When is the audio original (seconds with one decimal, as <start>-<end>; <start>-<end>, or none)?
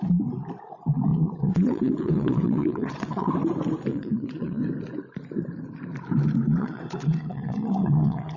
0.0-1.1; 3.3-3.9; 4.6-6.6